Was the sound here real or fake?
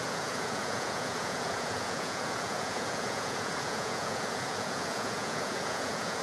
fake